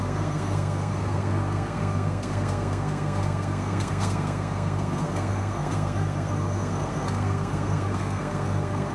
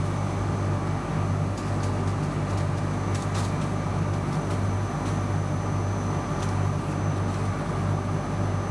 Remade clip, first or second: first